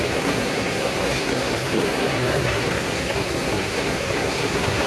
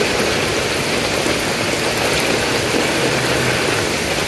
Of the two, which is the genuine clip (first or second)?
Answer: second